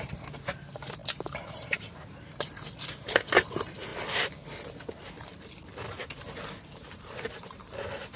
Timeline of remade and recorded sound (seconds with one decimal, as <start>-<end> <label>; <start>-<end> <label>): 0.0-3.9 remade; 3.9-6.6 recorded; 6.6-8.2 remade